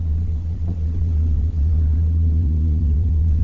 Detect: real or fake fake